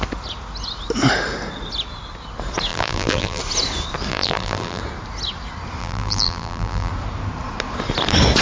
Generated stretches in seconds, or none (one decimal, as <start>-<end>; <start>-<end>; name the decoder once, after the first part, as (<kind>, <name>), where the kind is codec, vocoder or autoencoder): 2.7-3.4 (vocoder, BigVGAN v2); 4.1-4.8; 5.8-6.9